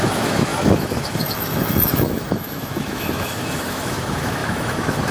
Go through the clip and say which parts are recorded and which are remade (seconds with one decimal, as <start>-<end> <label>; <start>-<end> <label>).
0.0-5.1 remade